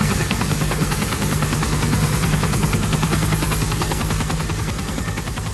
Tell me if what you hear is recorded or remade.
remade